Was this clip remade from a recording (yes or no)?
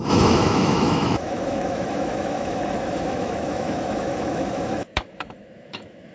yes